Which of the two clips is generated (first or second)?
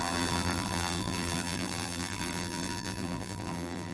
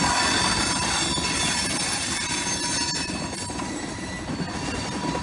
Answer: first